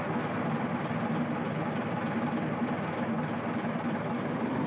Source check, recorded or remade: recorded